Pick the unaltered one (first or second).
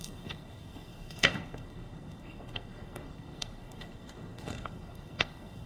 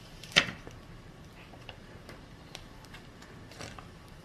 second